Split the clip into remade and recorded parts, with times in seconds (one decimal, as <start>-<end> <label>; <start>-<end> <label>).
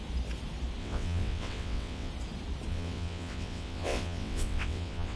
0.0-0.8 recorded; 0.8-2.1 remade; 2.1-2.7 recorded; 2.7-5.2 remade